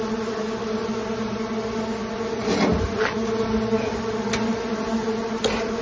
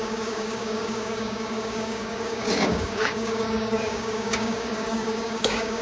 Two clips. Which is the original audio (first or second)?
first